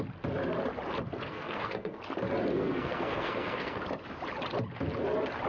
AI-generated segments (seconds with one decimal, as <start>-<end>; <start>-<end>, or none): 1.3-2.0; 2.5-3.8